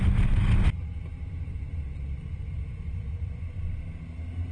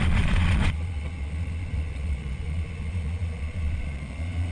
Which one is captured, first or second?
first